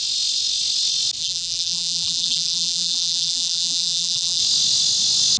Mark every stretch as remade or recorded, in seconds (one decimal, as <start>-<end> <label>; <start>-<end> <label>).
0.0-1.2 recorded; 1.2-4.4 remade; 4.4-5.4 recorded